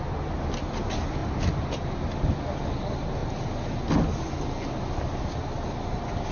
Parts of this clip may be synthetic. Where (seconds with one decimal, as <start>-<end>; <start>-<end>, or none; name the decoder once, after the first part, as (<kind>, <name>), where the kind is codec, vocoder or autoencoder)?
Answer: none